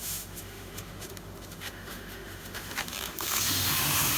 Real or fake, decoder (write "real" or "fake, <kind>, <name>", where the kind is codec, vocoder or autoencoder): fake, autoencoder, DAC-VAE